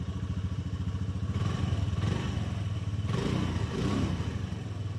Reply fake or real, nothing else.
real